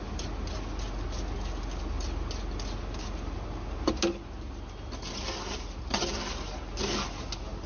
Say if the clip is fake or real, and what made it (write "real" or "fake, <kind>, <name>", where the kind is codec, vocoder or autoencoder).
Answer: real